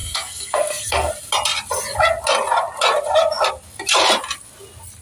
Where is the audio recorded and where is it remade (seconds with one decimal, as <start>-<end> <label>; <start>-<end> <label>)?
0.0-1.1 remade; 1.1-5.0 recorded

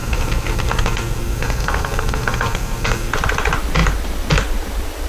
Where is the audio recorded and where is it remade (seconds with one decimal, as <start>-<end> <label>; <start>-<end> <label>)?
0.0-3.1 remade; 3.1-5.1 recorded

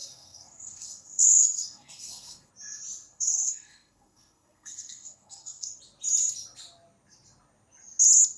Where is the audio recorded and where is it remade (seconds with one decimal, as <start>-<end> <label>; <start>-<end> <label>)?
0.0-2.5 remade; 2.5-3.1 recorded; 3.1-5.8 remade; 5.8-8.4 recorded

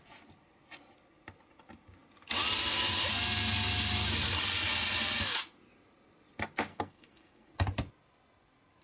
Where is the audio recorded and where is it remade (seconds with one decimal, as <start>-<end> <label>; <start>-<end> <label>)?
0.0-6.7 recorded; 6.7-7.5 remade; 7.5-8.8 recorded

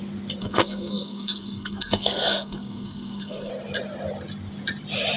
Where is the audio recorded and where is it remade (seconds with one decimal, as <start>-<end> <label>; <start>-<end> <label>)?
0.0-0.4 recorded; 0.4-3.5 remade; 3.5-5.2 recorded

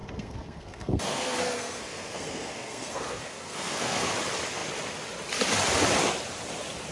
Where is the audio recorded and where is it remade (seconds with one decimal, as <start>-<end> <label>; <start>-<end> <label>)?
0.0-4.1 remade; 4.1-6.9 recorded